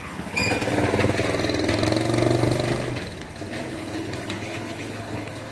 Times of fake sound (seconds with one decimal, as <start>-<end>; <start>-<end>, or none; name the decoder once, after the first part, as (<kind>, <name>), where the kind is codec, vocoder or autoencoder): 0.0-0.4 (codec, HILCodec); 3.7-5.5